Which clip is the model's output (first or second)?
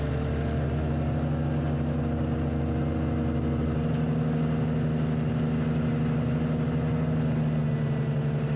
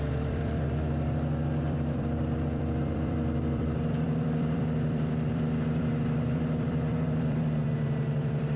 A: second